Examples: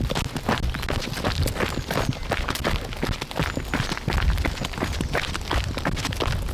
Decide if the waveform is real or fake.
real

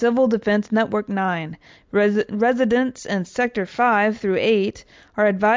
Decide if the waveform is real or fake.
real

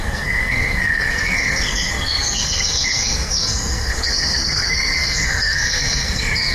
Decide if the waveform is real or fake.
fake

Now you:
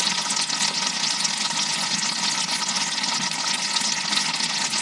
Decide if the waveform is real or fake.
fake